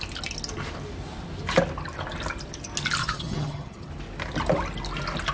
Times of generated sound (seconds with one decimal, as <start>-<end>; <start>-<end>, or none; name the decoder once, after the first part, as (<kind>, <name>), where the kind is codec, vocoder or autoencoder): 3.0-3.9 (vocoder, HiFi-GAN)